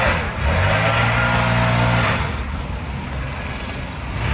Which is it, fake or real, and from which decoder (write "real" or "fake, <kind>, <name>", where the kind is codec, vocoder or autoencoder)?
real